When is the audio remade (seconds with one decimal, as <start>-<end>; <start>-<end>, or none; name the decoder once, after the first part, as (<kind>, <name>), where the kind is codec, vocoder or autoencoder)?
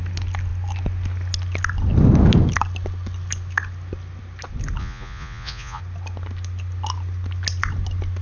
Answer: 4.8-5.8 (vocoder, Vocos)